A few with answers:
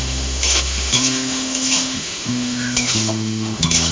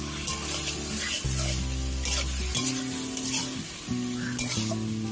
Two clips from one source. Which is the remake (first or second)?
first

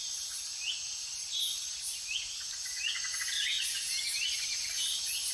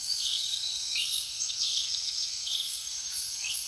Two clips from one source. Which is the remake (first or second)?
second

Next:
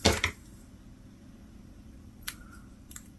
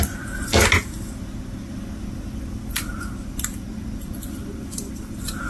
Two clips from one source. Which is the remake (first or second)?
first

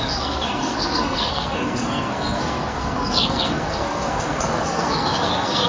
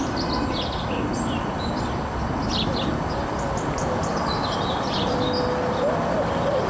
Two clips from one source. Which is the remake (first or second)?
first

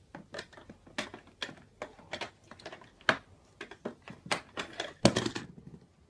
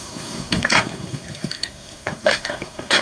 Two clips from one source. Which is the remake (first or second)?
second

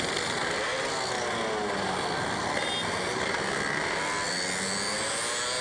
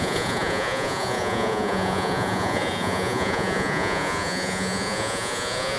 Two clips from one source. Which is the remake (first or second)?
second